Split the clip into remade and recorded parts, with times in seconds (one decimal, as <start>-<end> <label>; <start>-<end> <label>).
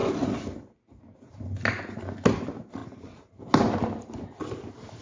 0.0-2.8 recorded; 2.8-3.4 remade; 3.4-5.0 recorded